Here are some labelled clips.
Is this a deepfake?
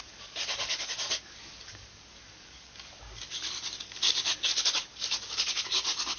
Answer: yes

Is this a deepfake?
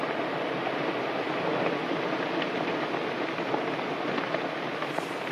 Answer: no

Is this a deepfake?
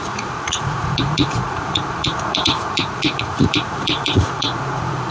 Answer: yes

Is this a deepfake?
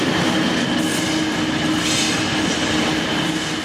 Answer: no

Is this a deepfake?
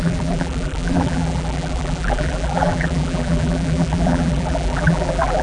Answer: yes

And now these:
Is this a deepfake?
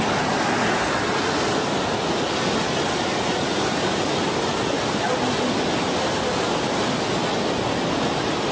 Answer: no